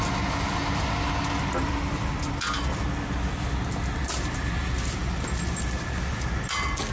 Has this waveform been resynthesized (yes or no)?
no